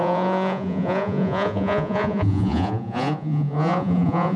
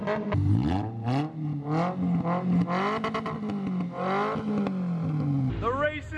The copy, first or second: first